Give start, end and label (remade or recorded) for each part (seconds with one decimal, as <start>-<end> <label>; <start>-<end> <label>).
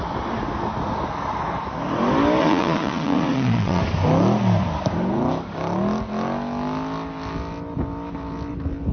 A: 0.0-2.4 recorded; 2.4-3.8 remade; 3.8-8.9 recorded